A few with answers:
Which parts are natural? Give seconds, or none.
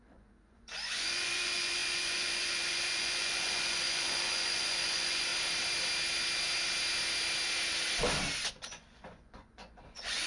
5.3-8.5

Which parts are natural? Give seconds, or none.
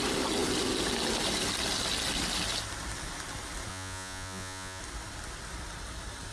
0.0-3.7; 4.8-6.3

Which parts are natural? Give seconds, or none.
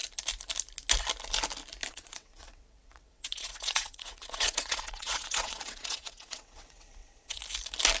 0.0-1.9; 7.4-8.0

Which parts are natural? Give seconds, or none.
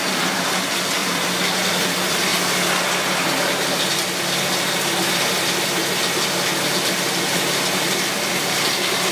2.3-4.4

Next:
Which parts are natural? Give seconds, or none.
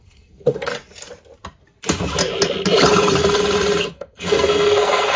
0.7-3.8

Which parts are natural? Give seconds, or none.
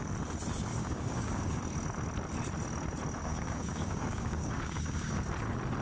0.0-0.7; 1.6-3.2; 5.2-5.8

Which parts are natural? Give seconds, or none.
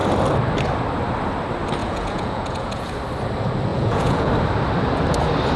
0.0-1.8; 2.9-3.7; 4.3-5.6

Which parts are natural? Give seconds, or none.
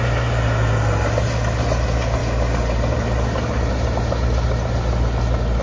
0.0-5.6